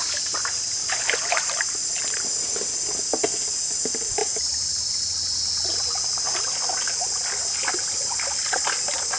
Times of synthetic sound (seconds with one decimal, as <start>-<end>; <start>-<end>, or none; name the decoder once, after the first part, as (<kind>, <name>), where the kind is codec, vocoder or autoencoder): 0.8-2.6 (vocoder, BigVGAN v2); 4.2-6.0